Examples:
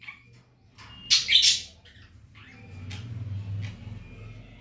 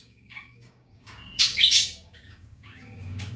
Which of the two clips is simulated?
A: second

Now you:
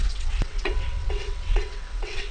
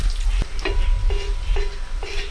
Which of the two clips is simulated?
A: first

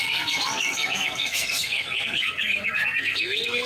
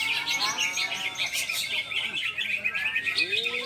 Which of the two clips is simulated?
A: first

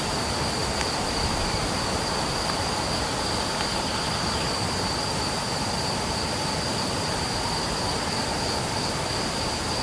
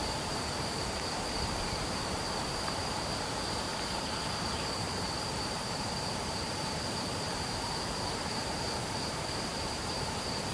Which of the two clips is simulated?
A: second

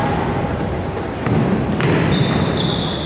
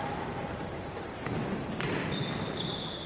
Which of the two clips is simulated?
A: second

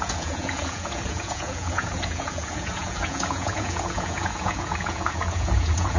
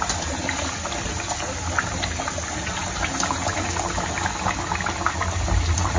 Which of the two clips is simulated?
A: first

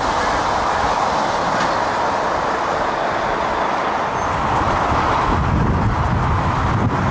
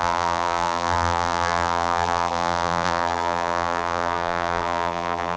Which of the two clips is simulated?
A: second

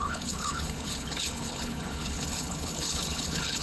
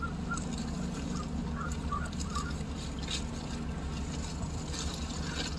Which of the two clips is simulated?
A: first